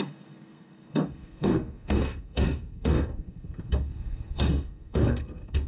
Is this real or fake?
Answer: fake